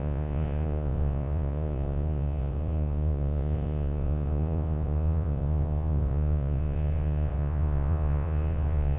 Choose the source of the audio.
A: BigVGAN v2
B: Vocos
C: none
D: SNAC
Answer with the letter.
B